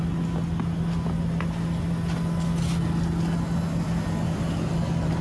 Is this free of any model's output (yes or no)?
yes